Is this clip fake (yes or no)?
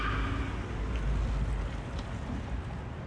no